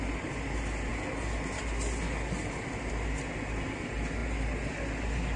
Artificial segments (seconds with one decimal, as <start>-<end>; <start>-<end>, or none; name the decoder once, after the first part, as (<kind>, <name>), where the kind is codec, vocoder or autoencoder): none